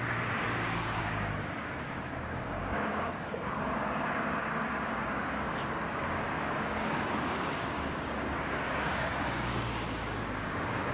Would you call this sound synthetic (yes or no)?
yes